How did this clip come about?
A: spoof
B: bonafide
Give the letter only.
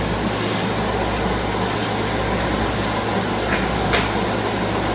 B